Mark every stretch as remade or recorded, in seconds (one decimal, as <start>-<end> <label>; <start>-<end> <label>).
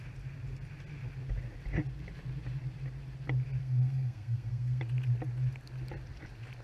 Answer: 0.0-3.6 recorded; 3.6-4.8 remade; 4.8-6.6 recorded